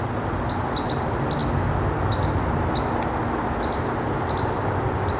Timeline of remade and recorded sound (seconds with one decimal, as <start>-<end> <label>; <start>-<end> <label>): 0.0-5.2 recorded